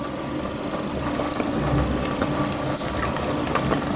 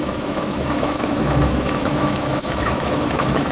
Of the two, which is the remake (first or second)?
second